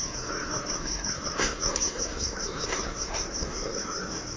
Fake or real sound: fake